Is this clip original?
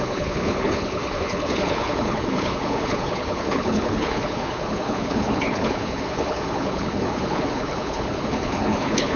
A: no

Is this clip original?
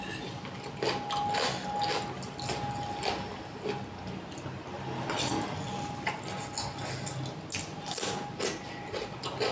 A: yes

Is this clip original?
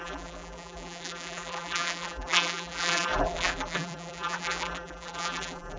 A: no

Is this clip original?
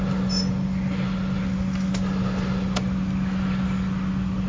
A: yes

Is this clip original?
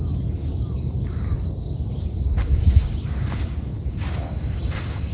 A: no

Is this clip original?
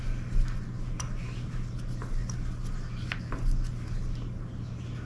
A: yes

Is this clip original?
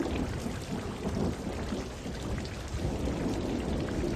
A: yes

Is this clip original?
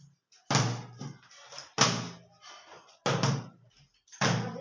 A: yes